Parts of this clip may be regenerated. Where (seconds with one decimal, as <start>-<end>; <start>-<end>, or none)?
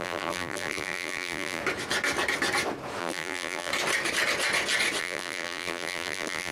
0.0-1.6; 3.0-3.7; 5.0-6.5